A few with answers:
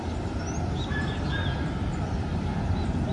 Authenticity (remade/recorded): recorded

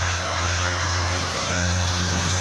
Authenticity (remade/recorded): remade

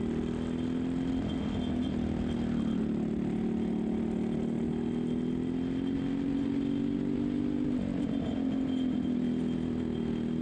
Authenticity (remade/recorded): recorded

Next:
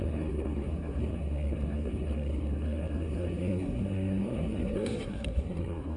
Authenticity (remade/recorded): remade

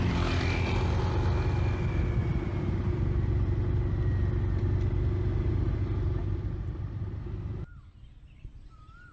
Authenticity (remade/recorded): recorded